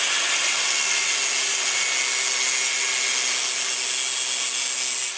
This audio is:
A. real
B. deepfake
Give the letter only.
A